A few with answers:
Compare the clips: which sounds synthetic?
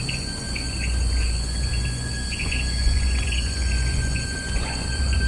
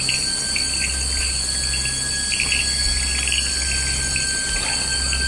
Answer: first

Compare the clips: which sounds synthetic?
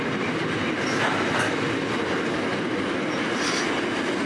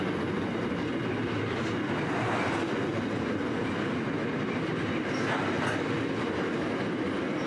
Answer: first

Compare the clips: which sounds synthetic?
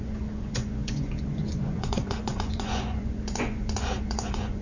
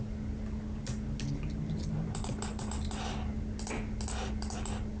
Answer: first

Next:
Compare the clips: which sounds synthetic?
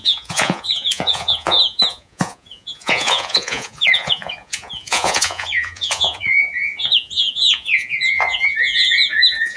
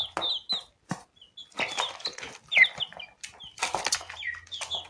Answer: first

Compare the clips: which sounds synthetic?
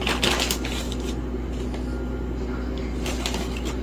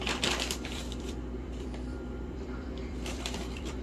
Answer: second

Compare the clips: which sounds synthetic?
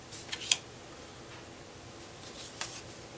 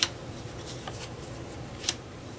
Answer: second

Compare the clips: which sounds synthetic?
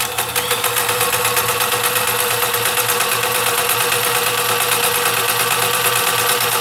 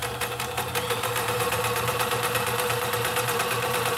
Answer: second